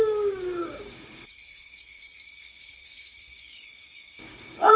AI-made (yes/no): yes